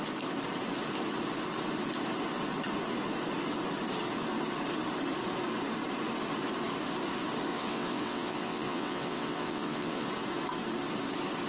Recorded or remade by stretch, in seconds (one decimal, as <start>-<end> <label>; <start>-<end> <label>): 0.0-7.5 recorded; 7.5-10.1 remade; 10.1-11.5 recorded